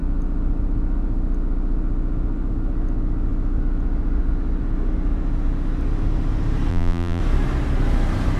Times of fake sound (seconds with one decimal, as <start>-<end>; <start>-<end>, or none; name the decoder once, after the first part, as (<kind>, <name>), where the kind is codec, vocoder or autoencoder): 6.7-7.2 (vocoder, BigVGAN v2)